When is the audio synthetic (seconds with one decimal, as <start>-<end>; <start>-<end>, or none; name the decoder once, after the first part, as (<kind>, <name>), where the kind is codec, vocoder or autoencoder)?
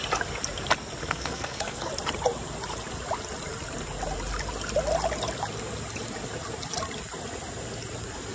1.0-1.9 (codec, SNAC)